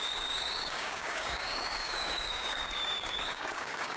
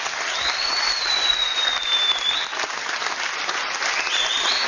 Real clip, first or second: second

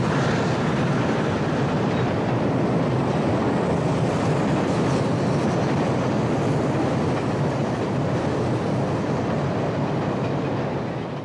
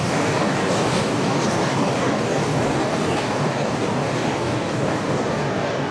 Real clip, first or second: first